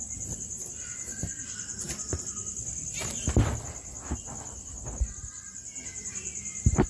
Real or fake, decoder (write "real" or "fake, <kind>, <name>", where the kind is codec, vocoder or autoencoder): real